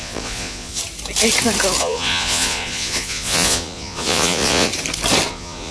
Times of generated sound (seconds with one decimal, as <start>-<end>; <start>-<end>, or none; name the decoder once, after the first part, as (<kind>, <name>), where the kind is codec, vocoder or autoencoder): 0.0-0.8 (vocoder, Vocos); 1.8-4.7; 5.3-5.7